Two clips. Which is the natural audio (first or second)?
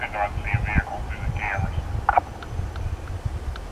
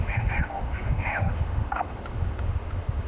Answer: first